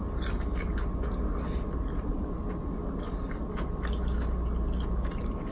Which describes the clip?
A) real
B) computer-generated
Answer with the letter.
A